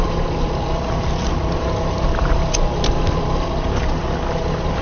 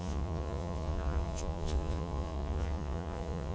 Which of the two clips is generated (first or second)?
second